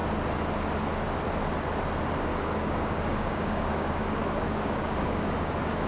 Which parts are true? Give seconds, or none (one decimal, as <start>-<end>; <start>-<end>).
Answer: 0.0-2.3; 5.5-5.9